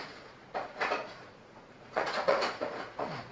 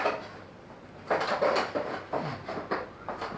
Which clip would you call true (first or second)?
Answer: second